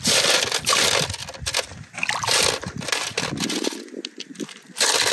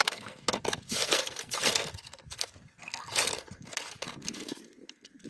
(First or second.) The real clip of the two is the first